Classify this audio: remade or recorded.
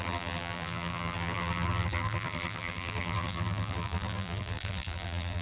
remade